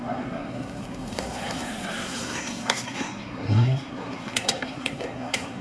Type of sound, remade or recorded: remade